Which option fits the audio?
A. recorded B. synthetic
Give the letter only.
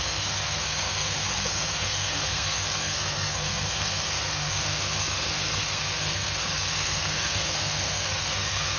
B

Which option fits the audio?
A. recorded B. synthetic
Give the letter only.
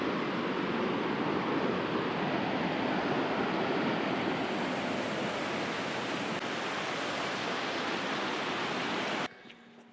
A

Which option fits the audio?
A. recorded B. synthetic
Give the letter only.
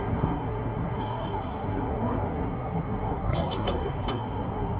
B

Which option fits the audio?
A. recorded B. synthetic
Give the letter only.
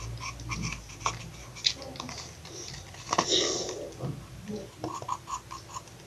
A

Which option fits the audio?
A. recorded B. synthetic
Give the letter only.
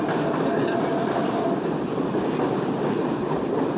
A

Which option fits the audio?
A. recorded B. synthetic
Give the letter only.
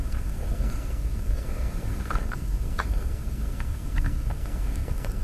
B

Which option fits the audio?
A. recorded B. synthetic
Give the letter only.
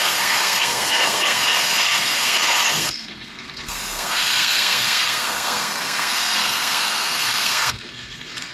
B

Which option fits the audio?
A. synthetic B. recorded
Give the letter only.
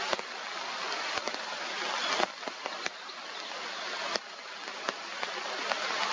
B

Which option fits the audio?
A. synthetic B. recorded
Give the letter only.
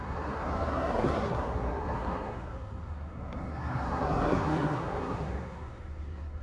A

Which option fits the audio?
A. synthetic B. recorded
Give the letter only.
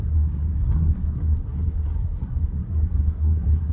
A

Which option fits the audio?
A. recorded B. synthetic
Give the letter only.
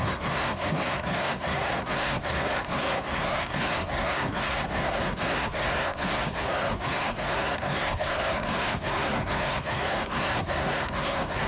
B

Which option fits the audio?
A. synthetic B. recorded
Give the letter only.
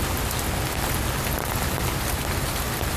B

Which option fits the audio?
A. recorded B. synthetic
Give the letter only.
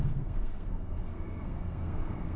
B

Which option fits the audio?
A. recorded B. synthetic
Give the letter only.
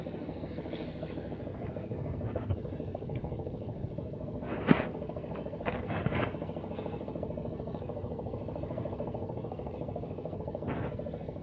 B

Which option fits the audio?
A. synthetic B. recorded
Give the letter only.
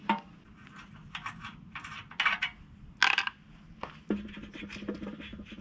B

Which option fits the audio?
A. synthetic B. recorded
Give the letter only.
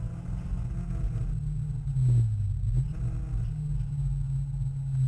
B